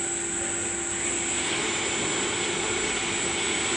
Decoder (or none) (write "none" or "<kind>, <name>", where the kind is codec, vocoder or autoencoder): none